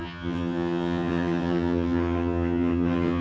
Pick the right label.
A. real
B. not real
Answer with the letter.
B